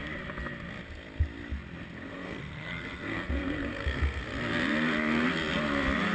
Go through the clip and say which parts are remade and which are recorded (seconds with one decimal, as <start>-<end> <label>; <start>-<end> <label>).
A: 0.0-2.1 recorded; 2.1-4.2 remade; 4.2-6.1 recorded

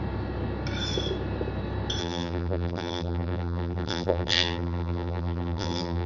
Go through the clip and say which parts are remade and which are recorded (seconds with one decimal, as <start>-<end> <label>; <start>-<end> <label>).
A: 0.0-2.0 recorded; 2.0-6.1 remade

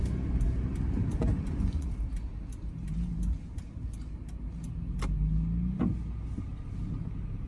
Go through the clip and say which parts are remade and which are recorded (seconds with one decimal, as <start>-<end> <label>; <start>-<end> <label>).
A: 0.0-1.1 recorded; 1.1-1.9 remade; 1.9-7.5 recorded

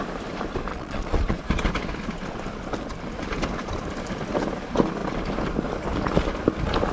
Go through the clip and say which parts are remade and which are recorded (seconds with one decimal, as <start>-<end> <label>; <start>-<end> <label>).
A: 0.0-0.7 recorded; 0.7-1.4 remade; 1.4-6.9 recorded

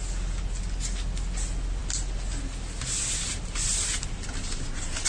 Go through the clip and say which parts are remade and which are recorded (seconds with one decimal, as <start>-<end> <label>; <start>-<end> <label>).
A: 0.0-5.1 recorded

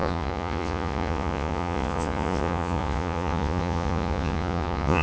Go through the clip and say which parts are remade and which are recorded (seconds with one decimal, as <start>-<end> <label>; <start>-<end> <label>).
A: 0.0-5.0 remade